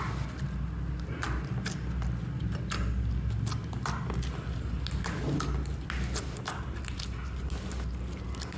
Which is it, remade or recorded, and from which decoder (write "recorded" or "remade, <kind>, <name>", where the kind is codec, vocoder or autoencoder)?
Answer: recorded